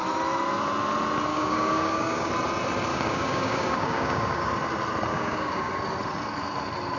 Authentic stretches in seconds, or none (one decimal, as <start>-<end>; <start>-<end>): 0.0-1.3; 2.3-2.9; 4.5-5.1; 5.7-7.0